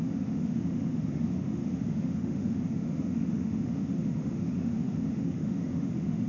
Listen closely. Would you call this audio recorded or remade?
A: remade